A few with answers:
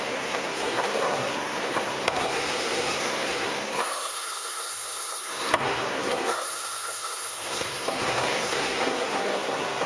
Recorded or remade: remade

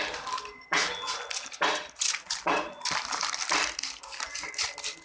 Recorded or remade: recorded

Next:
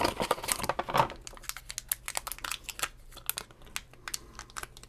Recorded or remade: recorded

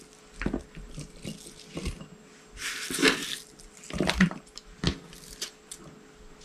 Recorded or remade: recorded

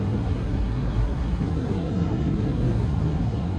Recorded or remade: remade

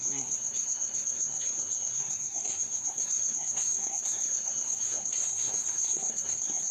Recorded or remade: remade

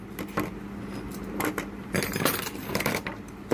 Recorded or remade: recorded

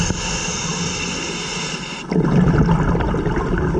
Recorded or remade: recorded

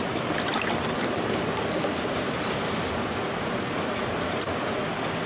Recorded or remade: recorded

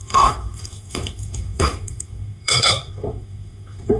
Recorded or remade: remade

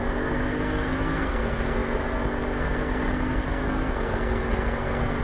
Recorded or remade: remade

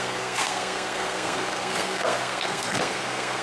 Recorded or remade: remade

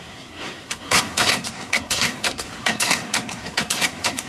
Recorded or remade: remade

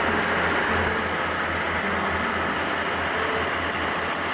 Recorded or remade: recorded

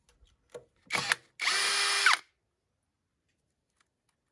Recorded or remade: recorded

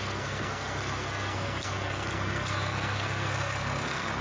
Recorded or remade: remade